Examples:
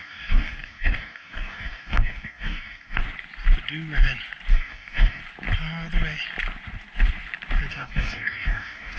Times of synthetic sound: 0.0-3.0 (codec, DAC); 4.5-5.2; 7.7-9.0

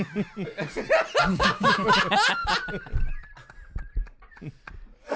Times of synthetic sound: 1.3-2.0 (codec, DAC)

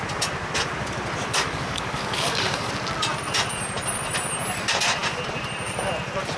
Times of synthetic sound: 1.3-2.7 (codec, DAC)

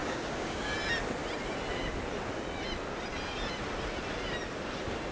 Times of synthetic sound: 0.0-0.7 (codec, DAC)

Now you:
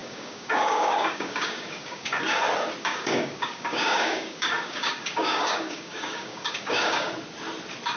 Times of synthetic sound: 0.0-2.4 (codec, DAC); 2.8-7.1

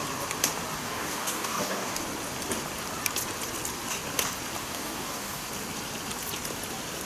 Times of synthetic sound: 0.8-2.0 (codec, DAC); 4.6-5.5

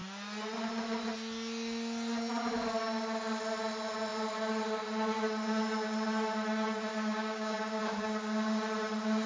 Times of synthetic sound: 6.9-7.8 (codec, DAC)

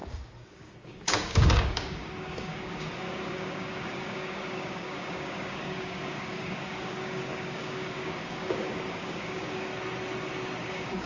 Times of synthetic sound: 0.0-9.7 (codec, DAC); 10.7-11.1